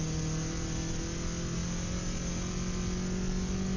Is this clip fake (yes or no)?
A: no